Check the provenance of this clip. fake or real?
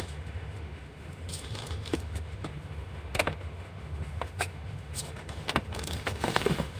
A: fake